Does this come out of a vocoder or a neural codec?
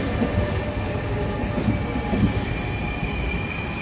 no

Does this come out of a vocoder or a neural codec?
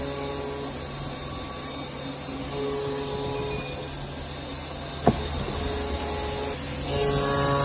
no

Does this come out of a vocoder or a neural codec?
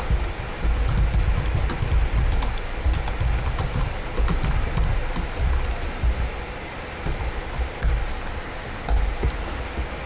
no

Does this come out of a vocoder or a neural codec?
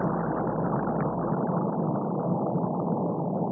no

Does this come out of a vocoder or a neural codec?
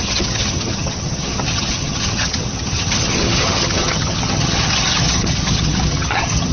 yes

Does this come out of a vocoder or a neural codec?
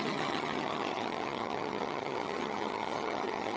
yes